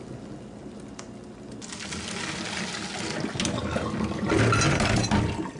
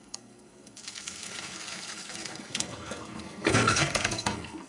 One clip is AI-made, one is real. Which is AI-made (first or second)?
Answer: second